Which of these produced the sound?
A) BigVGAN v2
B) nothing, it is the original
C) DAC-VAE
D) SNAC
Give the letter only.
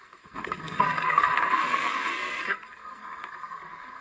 D